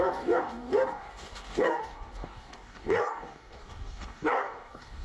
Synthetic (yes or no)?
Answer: yes